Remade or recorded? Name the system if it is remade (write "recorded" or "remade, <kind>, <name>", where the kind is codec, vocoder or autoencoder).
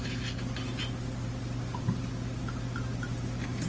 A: recorded